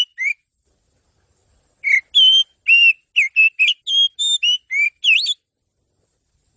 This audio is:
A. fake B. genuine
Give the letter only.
B